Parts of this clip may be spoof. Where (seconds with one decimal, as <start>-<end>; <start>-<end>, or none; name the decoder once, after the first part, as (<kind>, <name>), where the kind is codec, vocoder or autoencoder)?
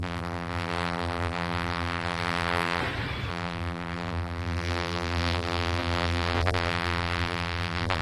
0.0-2.8 (vocoder, BigVGAN v2); 3.3-8.0